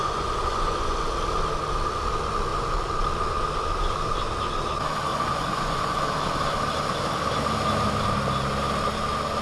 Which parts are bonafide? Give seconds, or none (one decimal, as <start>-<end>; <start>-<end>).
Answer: 1.0-5.1; 6.0-9.4